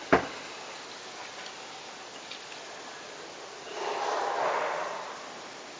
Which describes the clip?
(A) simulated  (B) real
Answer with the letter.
B